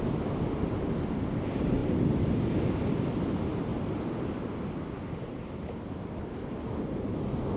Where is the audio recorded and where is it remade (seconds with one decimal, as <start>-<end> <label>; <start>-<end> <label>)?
0.0-7.6 recorded